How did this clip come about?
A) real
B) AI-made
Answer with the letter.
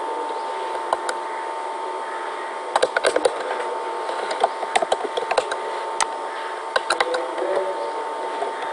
A